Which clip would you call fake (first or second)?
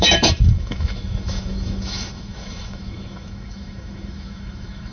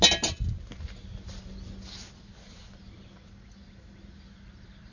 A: first